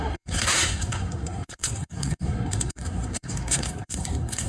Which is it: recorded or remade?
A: remade